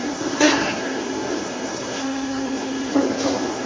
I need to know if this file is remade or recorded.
remade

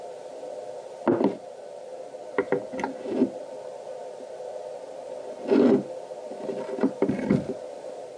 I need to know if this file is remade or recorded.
recorded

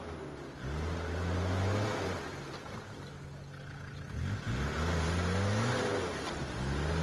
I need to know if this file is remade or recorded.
recorded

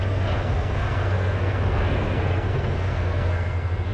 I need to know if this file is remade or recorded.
remade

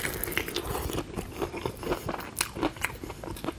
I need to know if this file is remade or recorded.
recorded